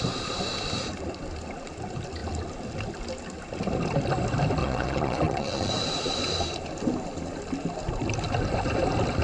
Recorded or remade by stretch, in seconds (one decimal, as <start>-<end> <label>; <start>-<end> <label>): 0.0-4.6 recorded; 4.6-5.7 remade; 5.7-9.2 recorded